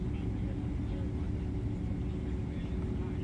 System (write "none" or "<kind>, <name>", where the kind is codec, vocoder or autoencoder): none